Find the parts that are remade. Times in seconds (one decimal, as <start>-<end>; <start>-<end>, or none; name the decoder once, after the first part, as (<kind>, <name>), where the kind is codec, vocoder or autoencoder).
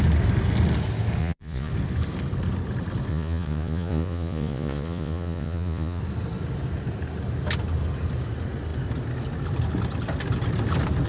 1.2-1.7 (vocoder, Vocos); 3.1-6.0